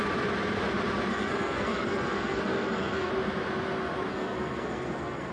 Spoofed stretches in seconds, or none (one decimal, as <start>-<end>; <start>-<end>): 1.1-3.1; 4.1-5.3